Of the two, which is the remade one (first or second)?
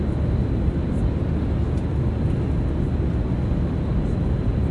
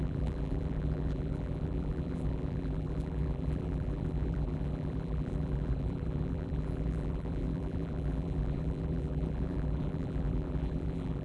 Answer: second